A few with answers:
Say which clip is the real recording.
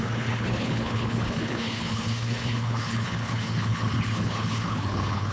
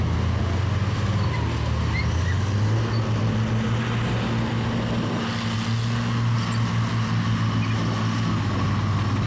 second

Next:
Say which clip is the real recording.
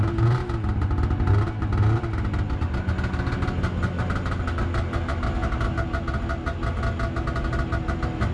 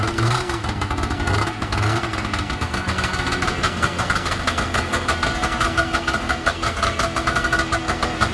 first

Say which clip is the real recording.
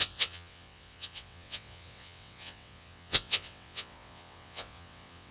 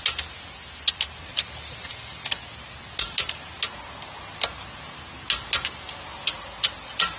second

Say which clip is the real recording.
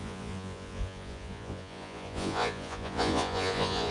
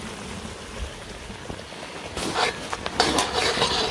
second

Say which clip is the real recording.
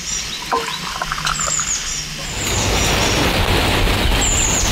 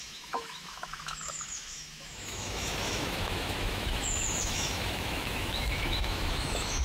first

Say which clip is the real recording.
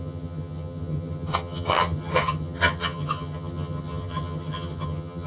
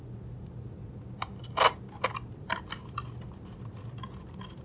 second